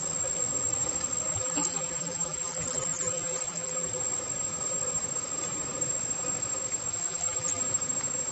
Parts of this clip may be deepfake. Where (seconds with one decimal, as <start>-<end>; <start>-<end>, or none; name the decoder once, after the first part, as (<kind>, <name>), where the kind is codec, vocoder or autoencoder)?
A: 1.3-4.0 (vocoder, BigVGAN v2); 6.9-7.6